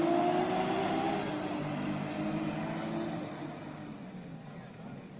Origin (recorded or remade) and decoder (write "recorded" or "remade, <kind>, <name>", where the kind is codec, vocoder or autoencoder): recorded